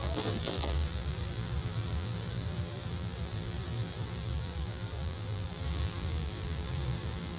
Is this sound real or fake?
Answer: fake